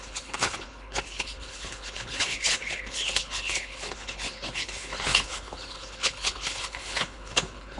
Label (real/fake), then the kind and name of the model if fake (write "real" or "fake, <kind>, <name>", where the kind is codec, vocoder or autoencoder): fake, codec, HILCodec